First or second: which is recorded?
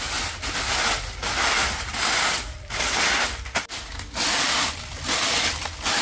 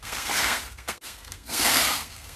first